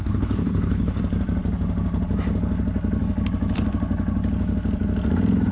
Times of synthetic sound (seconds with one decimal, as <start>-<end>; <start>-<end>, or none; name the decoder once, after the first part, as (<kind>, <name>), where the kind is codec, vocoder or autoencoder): 0.0-1.0 (codec, HILCodec)